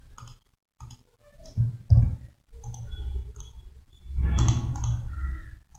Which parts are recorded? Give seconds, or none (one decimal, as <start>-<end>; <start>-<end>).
0.0-5.8